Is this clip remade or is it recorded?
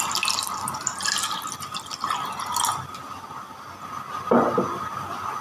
recorded